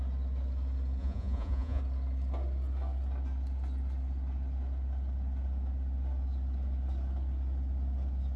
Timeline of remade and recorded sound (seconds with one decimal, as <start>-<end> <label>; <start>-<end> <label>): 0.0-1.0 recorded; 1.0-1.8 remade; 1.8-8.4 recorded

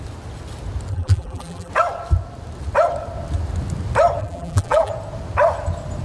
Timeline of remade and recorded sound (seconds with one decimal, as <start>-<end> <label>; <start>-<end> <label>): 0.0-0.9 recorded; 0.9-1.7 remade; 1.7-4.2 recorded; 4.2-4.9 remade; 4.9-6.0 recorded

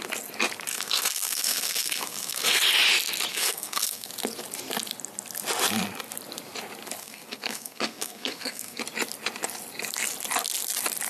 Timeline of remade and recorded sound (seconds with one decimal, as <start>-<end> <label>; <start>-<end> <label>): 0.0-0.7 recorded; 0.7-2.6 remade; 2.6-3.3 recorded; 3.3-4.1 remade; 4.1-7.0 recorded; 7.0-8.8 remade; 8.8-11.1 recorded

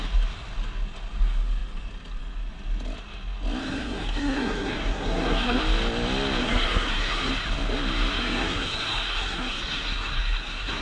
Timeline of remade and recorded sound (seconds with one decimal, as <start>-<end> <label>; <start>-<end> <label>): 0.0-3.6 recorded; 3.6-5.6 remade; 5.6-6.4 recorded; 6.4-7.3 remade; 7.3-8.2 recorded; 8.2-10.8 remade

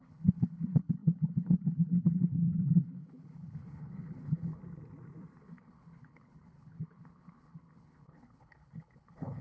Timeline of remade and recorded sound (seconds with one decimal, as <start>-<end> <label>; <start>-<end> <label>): 0.0-4.6 remade; 4.6-5.4 recorded; 5.4-9.4 remade